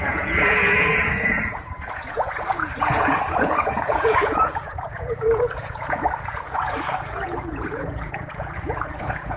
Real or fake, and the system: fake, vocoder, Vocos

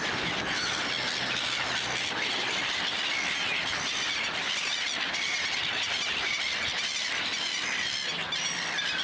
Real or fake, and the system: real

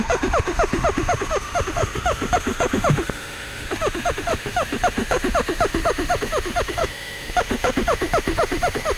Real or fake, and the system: fake, autoencoder, DAC-VAE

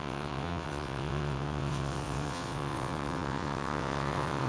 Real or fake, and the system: fake, vocoder, WaveNeXt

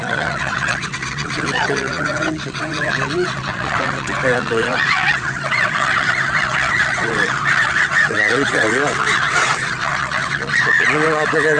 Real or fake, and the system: fake, vocoder, WaveNeXt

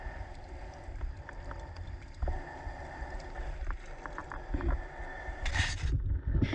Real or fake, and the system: real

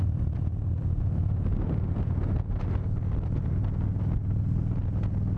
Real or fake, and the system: real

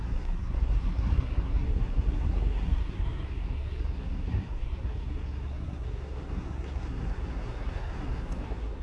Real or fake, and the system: fake, codec, SNAC